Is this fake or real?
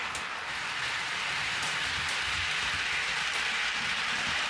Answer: real